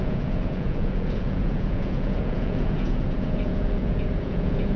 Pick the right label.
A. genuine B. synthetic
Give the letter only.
B